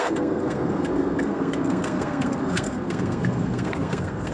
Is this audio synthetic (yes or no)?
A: yes